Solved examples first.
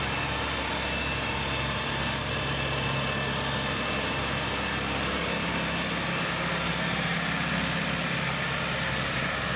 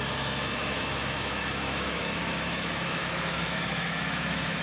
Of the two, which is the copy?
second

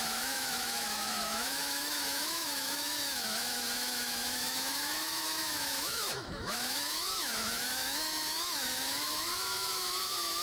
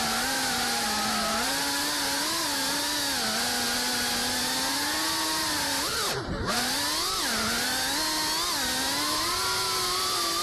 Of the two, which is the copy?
first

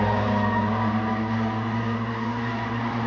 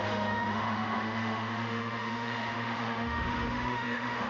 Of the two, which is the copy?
second